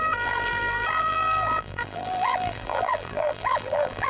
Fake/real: fake